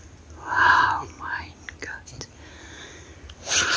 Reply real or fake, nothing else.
real